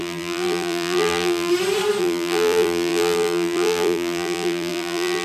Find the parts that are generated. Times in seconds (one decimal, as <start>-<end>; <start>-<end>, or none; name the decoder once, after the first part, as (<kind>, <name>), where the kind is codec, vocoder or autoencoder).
0.0-1.5 (vocoder, BigVGAN v2); 2.0-5.2